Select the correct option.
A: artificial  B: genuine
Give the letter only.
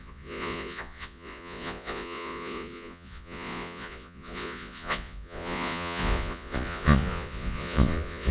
A